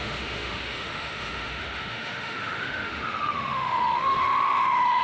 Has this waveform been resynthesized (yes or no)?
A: yes